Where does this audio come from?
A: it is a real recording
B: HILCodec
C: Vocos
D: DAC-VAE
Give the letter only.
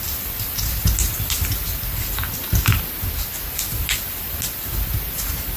A